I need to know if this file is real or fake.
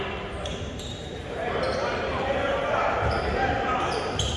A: fake